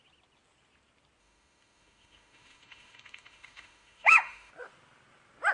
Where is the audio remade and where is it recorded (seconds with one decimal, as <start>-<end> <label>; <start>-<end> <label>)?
0.0-1.2 recorded; 1.2-4.5 remade; 4.5-5.5 recorded